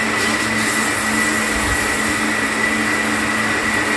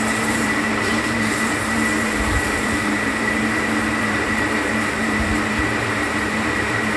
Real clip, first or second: first